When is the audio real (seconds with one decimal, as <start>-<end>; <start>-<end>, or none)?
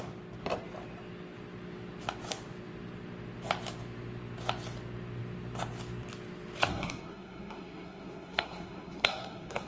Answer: 0.0-6.7